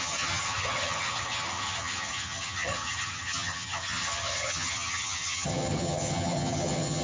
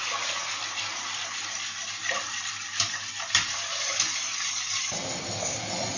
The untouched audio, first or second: second